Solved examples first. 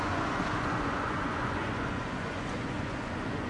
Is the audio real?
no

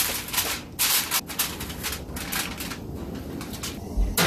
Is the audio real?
yes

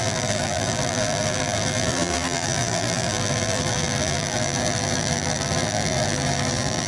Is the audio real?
no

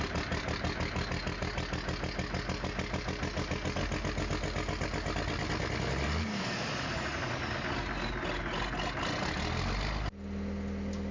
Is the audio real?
yes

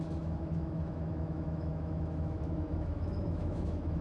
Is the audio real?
no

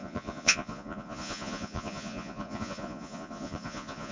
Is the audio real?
no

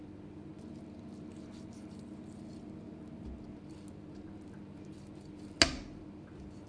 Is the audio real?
yes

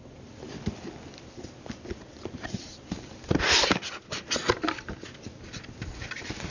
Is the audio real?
yes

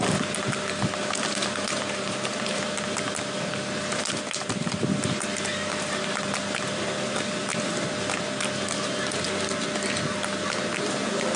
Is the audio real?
yes